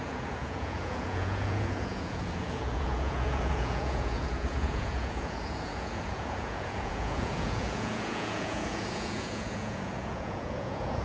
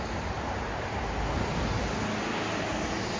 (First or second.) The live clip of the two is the second